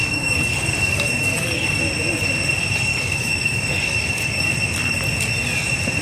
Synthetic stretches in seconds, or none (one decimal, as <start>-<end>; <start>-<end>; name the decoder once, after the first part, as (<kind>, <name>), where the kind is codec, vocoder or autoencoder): 0.0-1.8 (codec, DAC); 2.9-4.5